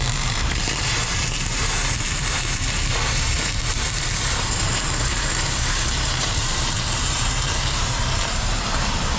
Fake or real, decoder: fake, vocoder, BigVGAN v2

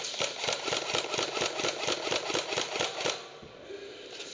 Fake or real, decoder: real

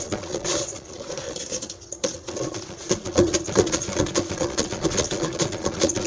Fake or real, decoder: fake, vocoder, Vocos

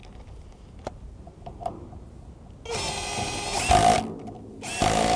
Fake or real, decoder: real